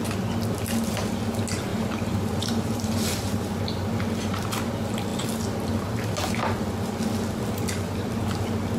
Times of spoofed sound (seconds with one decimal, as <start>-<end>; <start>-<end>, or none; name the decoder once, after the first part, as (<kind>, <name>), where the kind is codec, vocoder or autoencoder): 1.7-3.5 (vocoder, BigVGAN v2)